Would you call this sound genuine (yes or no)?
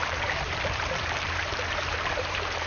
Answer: no